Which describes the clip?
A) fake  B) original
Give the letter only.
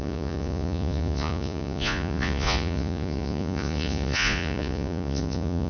A